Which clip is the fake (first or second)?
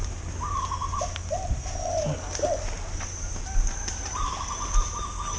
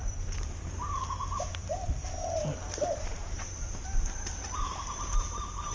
second